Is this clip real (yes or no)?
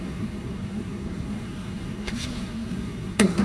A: no